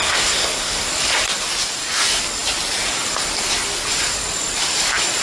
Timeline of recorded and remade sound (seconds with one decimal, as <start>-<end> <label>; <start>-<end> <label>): 0.0-0.9 remade; 0.9-5.2 recorded